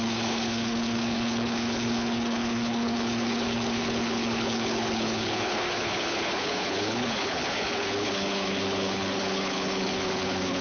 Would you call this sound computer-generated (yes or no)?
yes